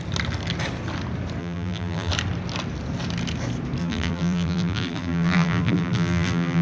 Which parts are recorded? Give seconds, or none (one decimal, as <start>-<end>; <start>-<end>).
0.0-1.4; 2.1-3.8